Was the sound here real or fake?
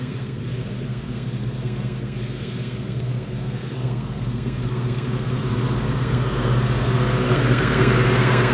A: fake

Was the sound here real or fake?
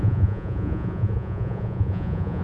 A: fake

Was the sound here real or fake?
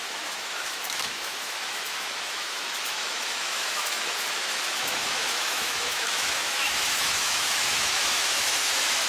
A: fake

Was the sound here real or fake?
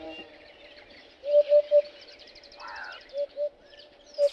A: fake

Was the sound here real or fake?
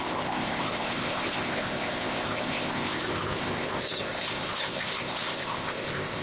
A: fake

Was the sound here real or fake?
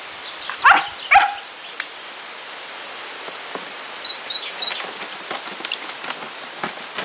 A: real